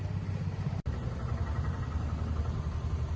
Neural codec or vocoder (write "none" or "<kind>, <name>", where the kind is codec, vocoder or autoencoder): none